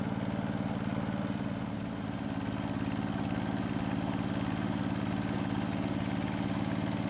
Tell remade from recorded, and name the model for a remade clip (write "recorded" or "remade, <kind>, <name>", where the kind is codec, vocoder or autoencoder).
recorded